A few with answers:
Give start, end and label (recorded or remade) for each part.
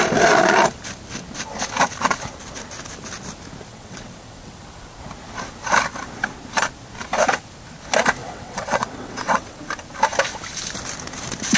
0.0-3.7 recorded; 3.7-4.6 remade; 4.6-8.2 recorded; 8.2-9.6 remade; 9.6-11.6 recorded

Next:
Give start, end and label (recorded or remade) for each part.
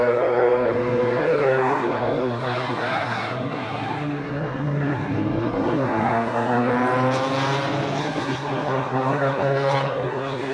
0.0-6.7 remade; 6.7-8.0 recorded; 8.0-10.5 remade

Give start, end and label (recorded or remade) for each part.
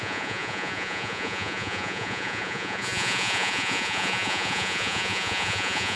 0.0-6.0 remade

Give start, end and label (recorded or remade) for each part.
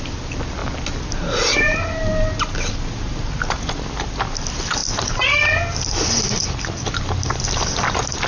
0.0-8.3 recorded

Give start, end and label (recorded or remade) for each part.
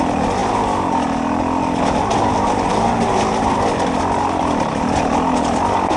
0.0-6.0 recorded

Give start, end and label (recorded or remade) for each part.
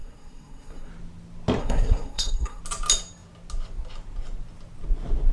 0.0-0.9 remade; 0.9-1.6 recorded; 1.6-2.6 remade; 2.6-5.3 recorded